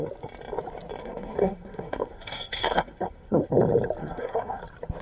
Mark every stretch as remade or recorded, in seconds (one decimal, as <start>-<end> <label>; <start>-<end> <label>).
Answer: 0.0-1.0 recorded; 1.0-3.5 remade; 3.5-4.0 recorded; 4.0-4.6 remade; 4.6-5.0 recorded